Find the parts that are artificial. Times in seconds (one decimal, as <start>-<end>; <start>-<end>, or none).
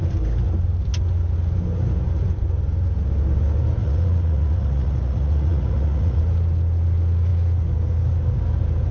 3.8-6.2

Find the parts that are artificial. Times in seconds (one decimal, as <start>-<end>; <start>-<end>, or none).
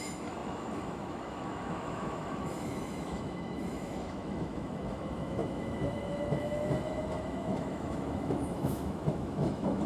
0.0-9.9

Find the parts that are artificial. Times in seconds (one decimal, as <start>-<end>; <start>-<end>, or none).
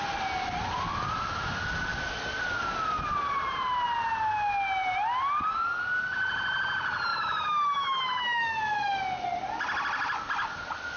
7.1-8.6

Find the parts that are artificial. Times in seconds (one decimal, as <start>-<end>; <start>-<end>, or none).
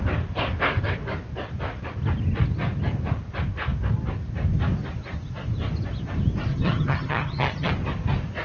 6.5-7.7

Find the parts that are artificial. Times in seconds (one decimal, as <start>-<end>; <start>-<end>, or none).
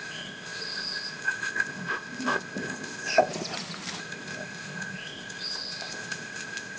0.0-3.3; 4.0-6.8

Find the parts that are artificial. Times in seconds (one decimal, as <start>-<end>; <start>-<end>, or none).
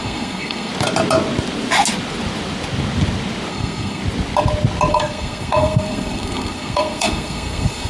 0.0-0.7; 3.5-4.0; 4.9-7.9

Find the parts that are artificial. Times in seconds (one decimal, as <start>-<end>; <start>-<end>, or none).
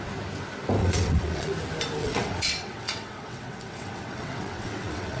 0.8-1.5; 2.0-5.2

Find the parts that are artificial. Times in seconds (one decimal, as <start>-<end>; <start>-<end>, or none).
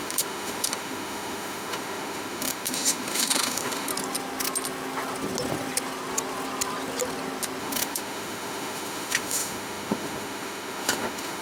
0.0-3.9; 7.6-11.4